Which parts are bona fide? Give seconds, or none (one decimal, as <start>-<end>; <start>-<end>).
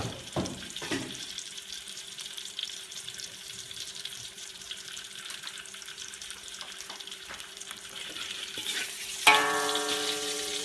none